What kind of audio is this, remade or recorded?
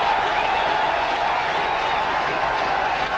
remade